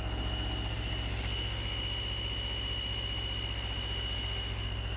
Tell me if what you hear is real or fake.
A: real